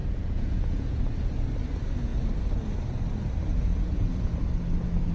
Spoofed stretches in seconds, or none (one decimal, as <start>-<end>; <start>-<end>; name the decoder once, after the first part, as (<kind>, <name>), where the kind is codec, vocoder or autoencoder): 0.0-1.0 (vocoder, Vocos); 3.7-4.5